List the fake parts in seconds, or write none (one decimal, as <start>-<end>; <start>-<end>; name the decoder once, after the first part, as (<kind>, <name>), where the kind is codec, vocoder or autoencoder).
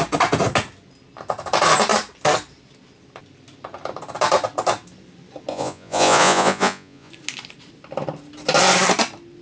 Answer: 5.5-7.1 (vocoder, Vocos)